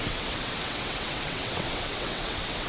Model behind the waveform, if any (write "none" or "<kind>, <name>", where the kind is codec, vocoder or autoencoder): vocoder, WaveNeXt